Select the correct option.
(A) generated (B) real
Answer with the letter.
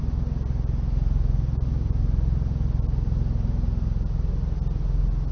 B